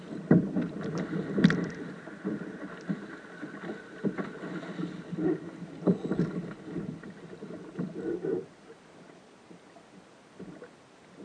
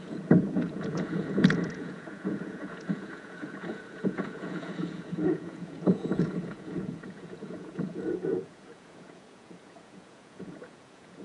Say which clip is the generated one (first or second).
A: second